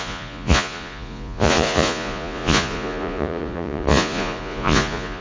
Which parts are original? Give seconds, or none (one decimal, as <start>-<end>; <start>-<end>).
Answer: none